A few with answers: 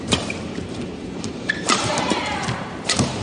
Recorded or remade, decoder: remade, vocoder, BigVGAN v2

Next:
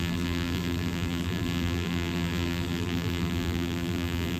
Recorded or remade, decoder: remade, vocoder, BigVGAN v2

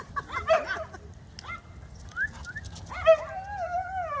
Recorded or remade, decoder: recorded